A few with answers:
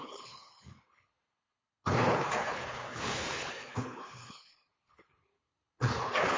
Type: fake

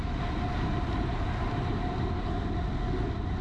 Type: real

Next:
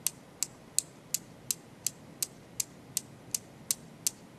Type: real